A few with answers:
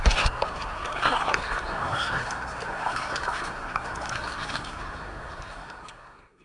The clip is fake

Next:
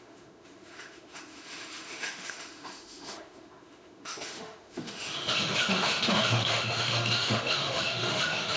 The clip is fake